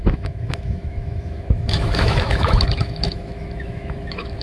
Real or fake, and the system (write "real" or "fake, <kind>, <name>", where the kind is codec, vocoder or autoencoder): fake, autoencoder, DAC-VAE